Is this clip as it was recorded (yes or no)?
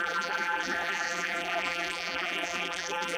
no